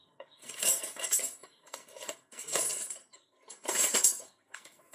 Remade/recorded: remade